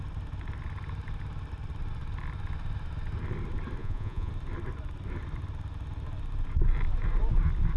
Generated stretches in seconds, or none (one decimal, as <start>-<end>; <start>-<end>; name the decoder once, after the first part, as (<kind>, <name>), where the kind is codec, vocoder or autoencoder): 3.8-4.3 (vocoder, Vocos)